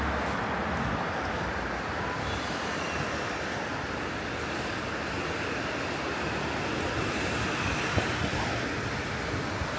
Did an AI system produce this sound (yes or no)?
no